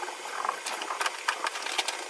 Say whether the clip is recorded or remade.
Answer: recorded